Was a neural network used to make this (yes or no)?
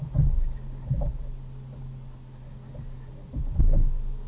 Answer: no